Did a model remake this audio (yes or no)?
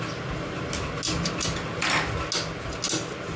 no